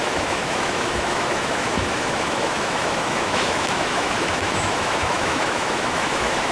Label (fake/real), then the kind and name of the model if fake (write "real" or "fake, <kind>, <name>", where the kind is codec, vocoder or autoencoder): fake, autoencoder, DAC-VAE